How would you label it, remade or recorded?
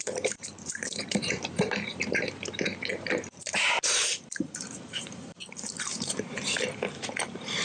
remade